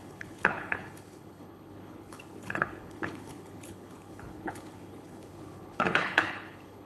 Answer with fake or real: fake